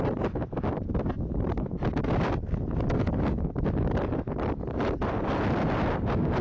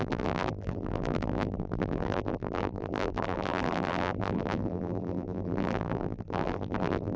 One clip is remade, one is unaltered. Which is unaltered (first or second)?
first